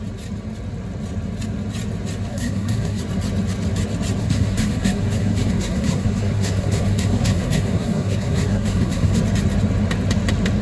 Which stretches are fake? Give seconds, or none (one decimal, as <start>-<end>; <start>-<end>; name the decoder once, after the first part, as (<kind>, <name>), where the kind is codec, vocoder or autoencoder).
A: 2.3-3.0 (codec, SNAC); 4.2-9.2